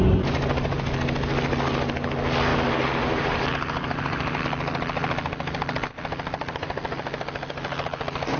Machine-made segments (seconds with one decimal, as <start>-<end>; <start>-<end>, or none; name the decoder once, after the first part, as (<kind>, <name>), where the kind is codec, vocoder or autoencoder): 2.5-4.4 (vocoder, BigVGAN v2)

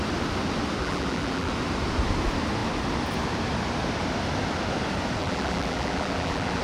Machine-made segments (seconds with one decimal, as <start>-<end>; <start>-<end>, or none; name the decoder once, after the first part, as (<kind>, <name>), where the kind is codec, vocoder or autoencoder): 0.8-1.5 (vocoder, BigVGAN v2); 5.2-6.6

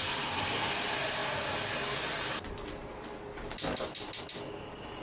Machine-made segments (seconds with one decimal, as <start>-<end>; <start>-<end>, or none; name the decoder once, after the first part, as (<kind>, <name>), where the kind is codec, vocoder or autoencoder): none

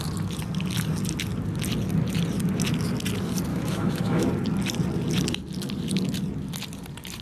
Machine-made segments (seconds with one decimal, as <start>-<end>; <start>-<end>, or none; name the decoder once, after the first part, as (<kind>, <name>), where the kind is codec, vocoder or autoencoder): 3.5-4.3 (autoencoder, DAC-VAE)

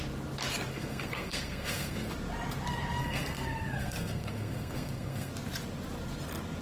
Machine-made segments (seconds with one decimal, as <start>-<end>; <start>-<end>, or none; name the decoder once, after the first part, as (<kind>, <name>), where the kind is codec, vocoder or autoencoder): 0.7-2.1 (codec, SNAC); 3.0-5.3

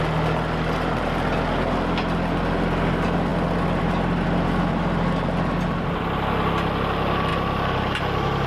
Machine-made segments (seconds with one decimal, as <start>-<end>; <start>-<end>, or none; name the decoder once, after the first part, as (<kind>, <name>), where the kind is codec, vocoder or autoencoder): 7.3-8.0 (vocoder, BigVGAN v2)

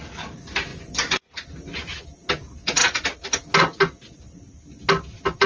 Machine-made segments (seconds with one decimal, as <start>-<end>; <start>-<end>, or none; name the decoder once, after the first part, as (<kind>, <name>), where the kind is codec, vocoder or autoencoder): 0.7-1.3 (vocoder, Vocos)

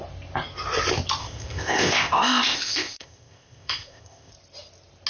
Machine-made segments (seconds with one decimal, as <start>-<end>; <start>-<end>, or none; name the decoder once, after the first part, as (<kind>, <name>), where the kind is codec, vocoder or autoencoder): 1.2-4.3 (codec, ZipCodec)